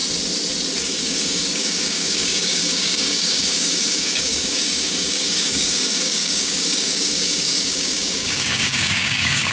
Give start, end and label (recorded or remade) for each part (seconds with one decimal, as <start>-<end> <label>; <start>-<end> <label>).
0.0-0.8 recorded; 0.8-9.5 remade